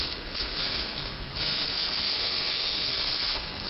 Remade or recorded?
remade